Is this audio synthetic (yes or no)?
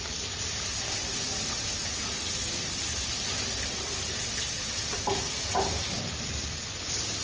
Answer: yes